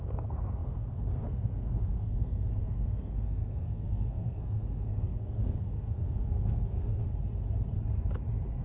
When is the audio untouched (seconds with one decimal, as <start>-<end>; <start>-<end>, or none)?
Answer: 7.0-8.6